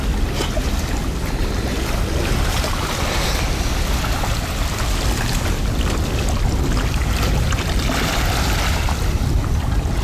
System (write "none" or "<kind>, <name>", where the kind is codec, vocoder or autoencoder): none